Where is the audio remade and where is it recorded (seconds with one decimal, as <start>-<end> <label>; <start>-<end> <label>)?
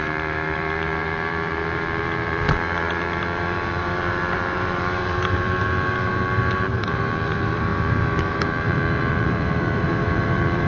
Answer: 0.0-10.7 remade